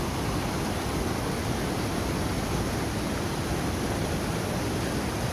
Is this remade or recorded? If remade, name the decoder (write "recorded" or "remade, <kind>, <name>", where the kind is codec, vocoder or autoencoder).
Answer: recorded